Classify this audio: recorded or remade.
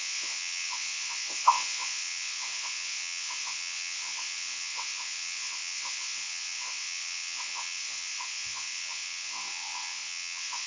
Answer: remade